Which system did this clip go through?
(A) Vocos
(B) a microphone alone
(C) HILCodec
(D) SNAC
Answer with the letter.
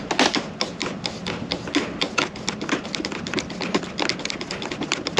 B